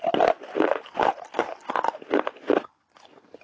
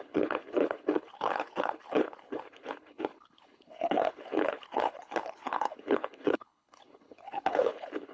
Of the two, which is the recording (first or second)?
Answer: first